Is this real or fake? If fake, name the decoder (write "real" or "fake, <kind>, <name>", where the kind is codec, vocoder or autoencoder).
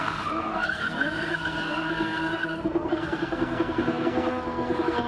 fake, codec, SNAC